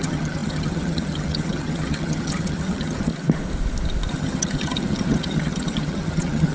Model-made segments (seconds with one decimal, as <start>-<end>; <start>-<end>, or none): 0.0-3.1; 4.1-6.5